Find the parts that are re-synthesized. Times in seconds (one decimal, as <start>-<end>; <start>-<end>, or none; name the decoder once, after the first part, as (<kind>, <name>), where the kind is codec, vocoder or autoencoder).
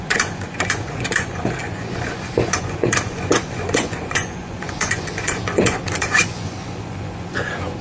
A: 0.0-7.8 (vocoder, Vocos)